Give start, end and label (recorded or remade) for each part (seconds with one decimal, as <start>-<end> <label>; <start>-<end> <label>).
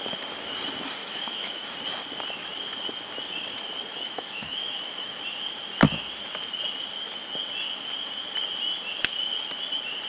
0.0-1.0 recorded; 1.0-1.7 remade; 1.7-3.9 recorded; 3.9-5.2 remade; 5.2-10.1 recorded